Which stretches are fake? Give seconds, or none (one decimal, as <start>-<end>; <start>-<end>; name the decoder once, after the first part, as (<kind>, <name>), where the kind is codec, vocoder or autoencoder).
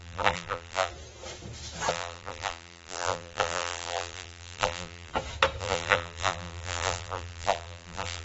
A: 0.0-0.9 (vocoder, BigVGAN v2); 1.9-5.1; 5.6-8.2